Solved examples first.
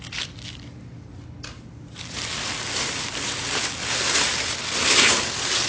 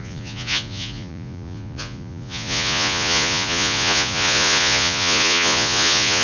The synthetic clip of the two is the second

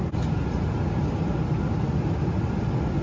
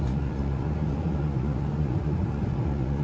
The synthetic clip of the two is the second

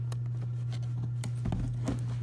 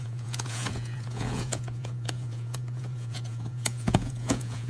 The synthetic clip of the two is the second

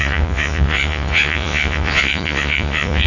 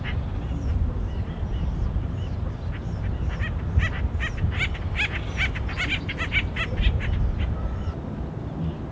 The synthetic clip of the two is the first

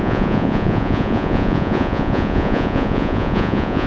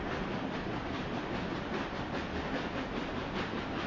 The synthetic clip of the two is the first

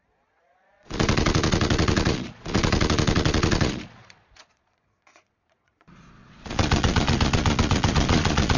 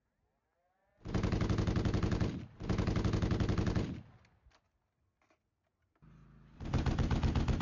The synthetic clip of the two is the first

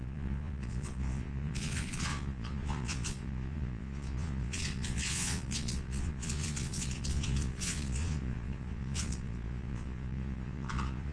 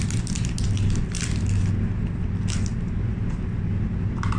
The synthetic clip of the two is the first